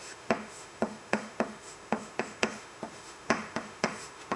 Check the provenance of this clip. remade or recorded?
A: remade